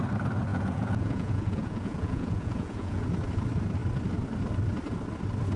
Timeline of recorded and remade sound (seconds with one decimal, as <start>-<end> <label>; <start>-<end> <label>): 0.0-0.5 recorded; 0.5-3.0 remade; 3.0-5.6 recorded